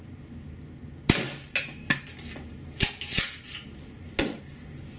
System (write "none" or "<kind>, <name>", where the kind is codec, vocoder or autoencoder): none